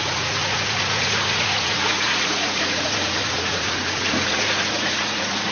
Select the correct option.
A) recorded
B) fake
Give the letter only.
B